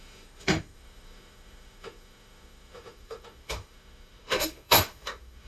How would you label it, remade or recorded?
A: remade